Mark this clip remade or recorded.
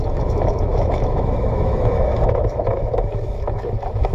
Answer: remade